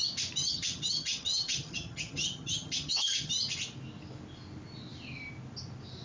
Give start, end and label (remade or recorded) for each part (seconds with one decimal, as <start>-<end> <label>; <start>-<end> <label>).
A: 0.0-0.4 recorded; 0.4-3.3 remade; 3.3-6.0 recorded